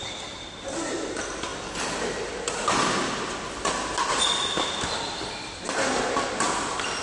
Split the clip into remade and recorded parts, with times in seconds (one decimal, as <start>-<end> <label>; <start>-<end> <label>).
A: 0.0-7.0 recorded